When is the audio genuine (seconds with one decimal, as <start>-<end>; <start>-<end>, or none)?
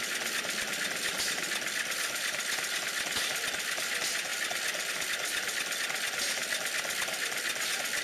0.0-8.0